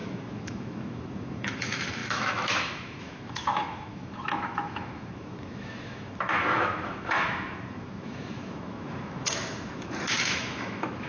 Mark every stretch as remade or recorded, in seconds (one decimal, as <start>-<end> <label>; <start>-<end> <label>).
0.0-11.1 remade